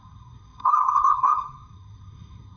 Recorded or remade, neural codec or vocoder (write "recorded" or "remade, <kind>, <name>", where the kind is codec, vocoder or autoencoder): remade, codec, SNAC